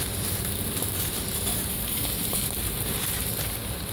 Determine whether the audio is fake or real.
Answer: fake